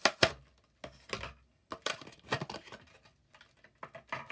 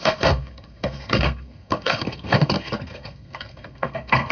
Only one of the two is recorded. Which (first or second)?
first